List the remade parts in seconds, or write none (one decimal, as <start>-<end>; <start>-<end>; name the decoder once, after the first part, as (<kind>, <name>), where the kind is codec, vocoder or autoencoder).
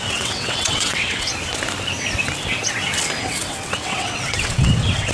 0.0-1.3 (vocoder, WaveNeXt); 3.2-5.1